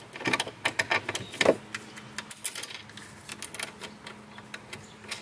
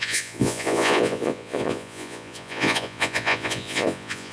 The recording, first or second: first